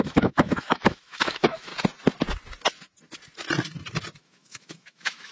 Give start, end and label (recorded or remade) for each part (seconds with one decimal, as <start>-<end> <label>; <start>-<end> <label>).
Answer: 0.0-1.7 remade; 1.7-4.2 recorded; 4.2-5.3 remade